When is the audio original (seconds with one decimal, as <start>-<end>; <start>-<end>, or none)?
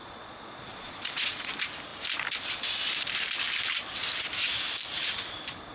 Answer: 1.5-5.7